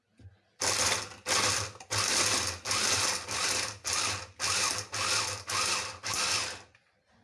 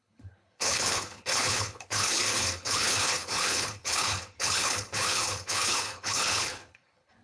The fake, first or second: second